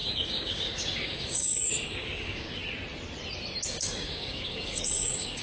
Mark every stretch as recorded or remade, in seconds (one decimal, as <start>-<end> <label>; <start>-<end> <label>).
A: 0.0-2.6 remade; 2.6-3.7 recorded; 3.7-5.4 remade

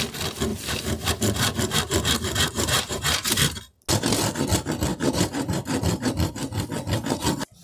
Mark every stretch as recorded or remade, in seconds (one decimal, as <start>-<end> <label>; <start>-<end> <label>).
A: 0.0-0.5 recorded; 0.5-3.6 remade; 3.6-4.9 recorded; 4.9-6.1 remade; 6.1-7.6 recorded

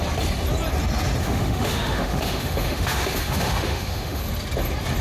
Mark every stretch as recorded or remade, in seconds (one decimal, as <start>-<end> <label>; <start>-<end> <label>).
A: 0.0-1.2 recorded; 1.2-4.2 remade; 4.2-5.0 recorded

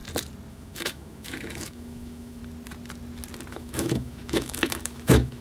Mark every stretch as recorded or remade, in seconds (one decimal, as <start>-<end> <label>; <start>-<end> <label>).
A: 0.0-0.5 recorded; 0.5-2.4 remade; 2.4-3.5 recorded; 3.5-5.4 remade

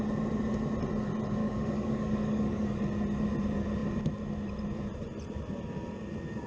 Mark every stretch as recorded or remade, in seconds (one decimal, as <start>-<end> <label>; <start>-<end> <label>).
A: 0.0-1.4 recorded; 1.4-2.8 remade; 2.8-6.5 recorded